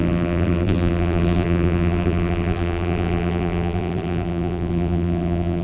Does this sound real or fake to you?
fake